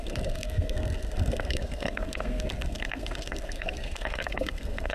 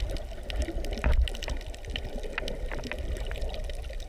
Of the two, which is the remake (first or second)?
first